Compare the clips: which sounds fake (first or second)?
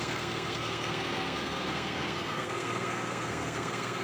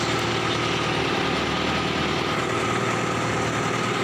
first